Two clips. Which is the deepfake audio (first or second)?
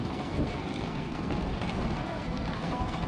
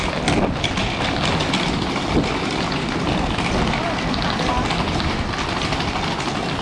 first